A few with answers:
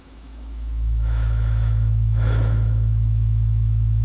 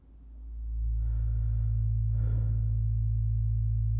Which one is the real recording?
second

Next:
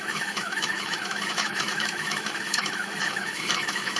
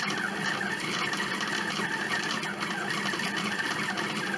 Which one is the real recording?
second